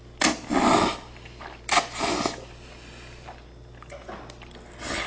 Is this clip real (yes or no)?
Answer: yes